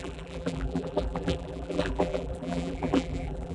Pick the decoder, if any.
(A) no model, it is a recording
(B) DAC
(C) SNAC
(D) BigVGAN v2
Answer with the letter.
D